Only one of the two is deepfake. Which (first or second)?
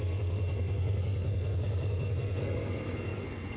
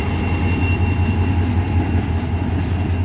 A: first